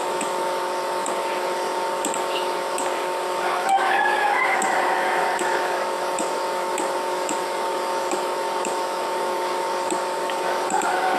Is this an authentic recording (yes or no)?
no